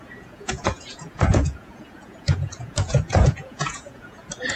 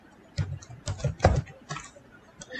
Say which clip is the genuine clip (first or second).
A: second